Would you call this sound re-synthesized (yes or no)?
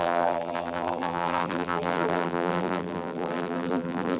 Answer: yes